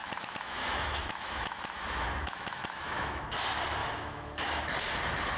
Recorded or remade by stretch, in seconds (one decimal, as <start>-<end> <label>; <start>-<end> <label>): 0.0-3.2 remade; 3.2-3.8 recorded; 3.8-4.6 remade; 4.6-5.4 recorded